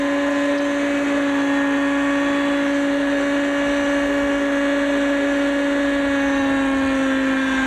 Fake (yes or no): no